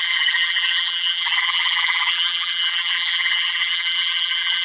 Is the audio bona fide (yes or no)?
no